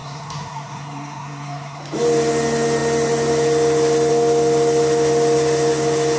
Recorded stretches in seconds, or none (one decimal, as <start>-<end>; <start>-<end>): 1.8-6.2